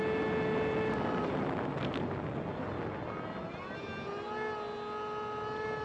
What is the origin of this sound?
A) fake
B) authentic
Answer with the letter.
B